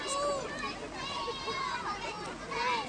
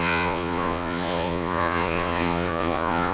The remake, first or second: second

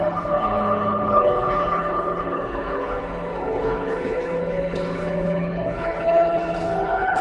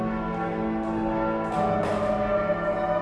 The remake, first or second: first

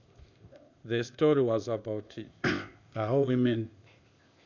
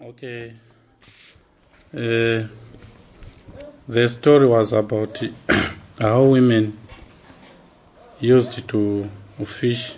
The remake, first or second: first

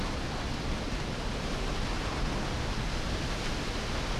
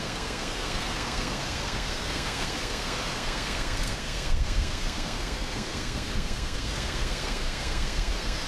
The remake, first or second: second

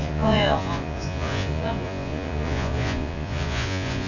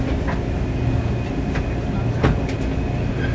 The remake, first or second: first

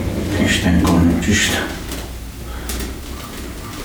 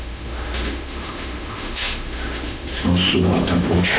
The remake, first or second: second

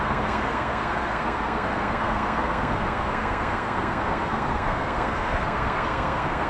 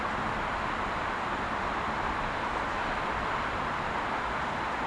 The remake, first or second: first